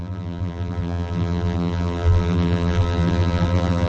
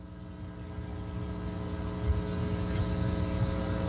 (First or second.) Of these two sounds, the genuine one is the second